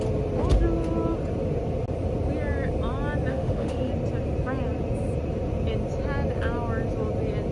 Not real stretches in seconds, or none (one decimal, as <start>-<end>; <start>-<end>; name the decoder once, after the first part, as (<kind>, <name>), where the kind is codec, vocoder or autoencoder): 3.3-3.9 (autoencoder, DAC-VAE)